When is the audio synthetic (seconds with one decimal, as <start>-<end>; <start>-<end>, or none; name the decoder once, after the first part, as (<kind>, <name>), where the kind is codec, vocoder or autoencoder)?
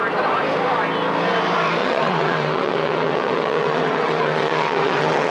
1.8-5.3 (vocoder, WaveNeXt)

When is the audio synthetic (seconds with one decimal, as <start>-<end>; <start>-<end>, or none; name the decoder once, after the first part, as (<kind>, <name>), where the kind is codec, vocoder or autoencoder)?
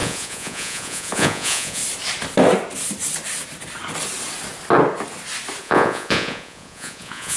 0.0-1.8 (vocoder, Vocos); 5.6-7.4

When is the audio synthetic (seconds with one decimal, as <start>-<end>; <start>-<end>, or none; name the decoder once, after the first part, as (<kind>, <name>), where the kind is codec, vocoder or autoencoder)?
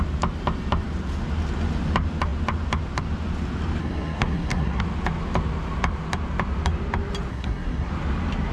3.8-4.8 (codec, SNAC); 7.3-7.9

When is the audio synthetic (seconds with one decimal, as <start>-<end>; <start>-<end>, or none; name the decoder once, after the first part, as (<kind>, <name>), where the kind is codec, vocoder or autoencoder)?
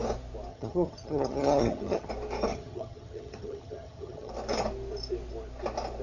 0.5-2.1 (vocoder, HiFi-GAN); 2.5-4.3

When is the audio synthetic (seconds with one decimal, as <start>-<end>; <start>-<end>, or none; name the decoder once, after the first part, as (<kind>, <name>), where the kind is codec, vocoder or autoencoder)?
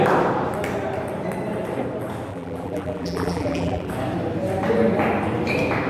2.3-3.9 (vocoder, BigVGAN v2)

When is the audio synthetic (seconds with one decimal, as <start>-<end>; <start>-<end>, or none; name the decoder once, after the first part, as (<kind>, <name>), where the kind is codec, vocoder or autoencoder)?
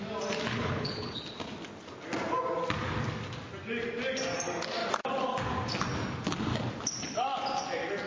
0.5-1.2 (codec, HILCodec)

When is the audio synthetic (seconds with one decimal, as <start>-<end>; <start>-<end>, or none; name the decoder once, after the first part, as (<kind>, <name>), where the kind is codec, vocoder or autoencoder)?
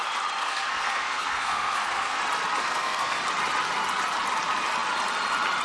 0.4-2.2 (codec, SNAC); 2.6-3.2